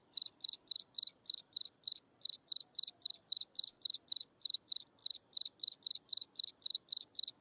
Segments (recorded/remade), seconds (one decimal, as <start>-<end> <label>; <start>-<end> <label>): 0.0-7.4 recorded